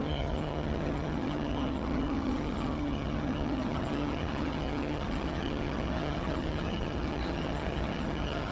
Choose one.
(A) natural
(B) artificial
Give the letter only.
B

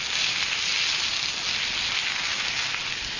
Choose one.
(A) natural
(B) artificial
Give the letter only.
A